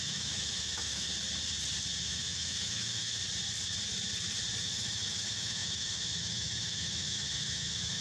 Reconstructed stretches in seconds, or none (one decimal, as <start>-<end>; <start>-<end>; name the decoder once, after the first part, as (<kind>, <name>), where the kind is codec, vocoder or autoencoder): 0.0-1.1 (autoencoder, DAC-VAE); 2.0-3.2; 4.6-8.0

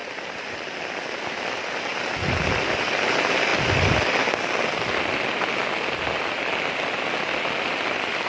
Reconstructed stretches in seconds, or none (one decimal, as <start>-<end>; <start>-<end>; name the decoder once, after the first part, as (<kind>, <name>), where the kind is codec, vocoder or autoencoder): none

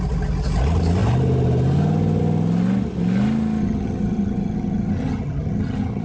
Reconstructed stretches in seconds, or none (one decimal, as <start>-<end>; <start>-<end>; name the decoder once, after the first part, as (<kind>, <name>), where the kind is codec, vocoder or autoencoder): 3.6-6.0 (vocoder, HiFi-GAN)

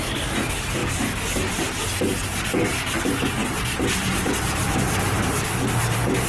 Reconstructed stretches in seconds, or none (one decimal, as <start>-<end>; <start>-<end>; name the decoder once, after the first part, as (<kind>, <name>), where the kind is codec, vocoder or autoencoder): none